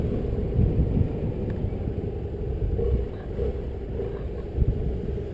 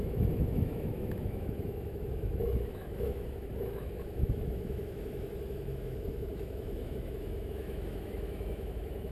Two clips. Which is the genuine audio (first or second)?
first